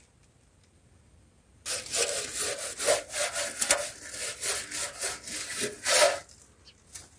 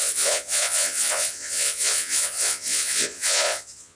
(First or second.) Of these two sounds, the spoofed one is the second